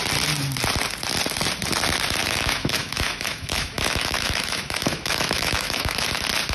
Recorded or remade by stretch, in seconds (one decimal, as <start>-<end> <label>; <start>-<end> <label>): 0.0-2.2 recorded; 2.2-6.1 remade; 6.1-6.5 recorded